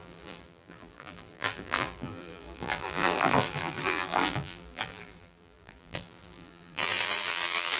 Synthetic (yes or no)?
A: yes